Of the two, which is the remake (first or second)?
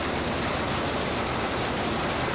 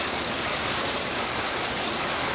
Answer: second